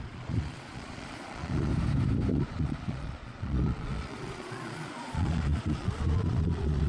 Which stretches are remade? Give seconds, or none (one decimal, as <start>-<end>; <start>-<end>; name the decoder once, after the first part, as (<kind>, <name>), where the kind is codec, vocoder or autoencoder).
0.0-1.7 (vocoder, Vocos); 2.3-6.9